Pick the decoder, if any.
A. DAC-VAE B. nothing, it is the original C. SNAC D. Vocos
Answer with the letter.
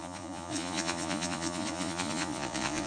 D